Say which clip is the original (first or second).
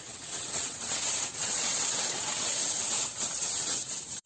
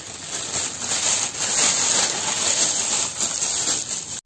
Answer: second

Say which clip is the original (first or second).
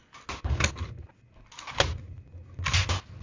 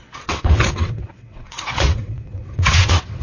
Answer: first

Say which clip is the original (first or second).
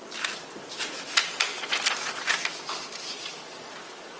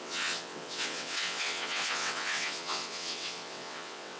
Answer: first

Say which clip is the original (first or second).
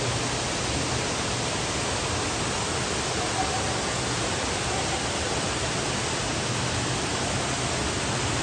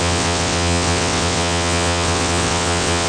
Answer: first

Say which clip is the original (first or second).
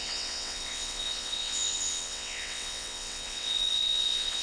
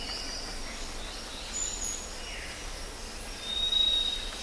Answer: second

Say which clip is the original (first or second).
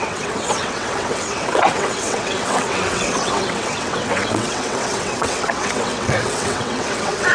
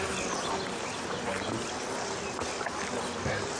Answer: second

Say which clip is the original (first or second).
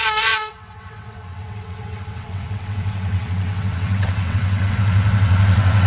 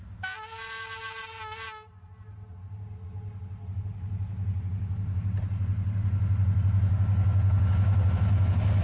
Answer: second